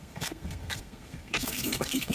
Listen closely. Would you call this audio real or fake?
fake